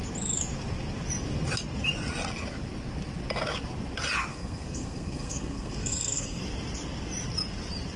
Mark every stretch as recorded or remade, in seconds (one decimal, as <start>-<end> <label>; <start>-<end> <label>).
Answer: 0.0-4.3 recorded; 4.3-6.4 remade; 6.4-8.0 recorded